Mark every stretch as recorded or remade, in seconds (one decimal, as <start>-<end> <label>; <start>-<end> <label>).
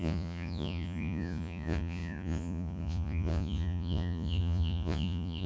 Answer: 0.0-5.5 remade